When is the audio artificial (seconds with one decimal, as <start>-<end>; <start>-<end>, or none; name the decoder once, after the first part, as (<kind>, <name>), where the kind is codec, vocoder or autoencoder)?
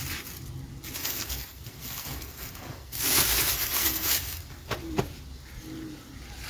1.0-4.7 (codec, SNAC)